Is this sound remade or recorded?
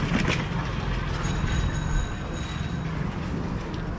recorded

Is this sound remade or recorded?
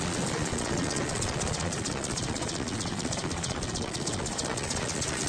remade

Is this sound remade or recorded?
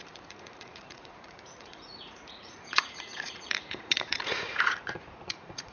remade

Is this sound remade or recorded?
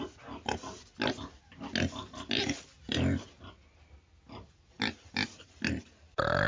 recorded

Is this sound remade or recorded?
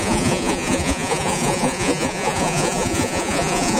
remade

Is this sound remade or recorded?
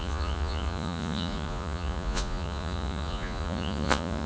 remade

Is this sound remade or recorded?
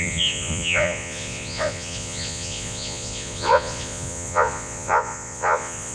remade